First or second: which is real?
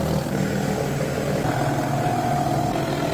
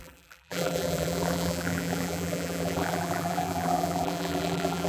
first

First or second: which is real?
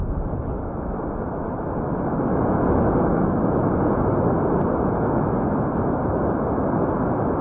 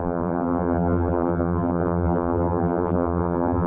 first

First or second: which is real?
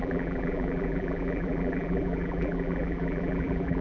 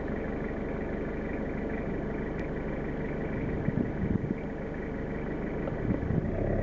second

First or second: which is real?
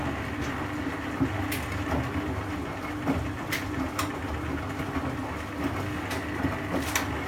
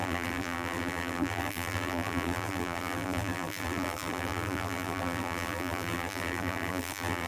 first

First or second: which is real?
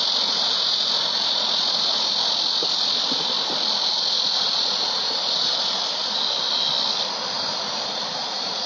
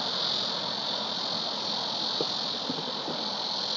second